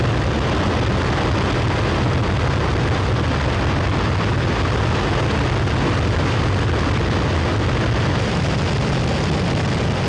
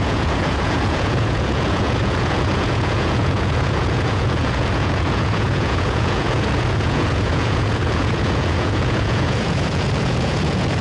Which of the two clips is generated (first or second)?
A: second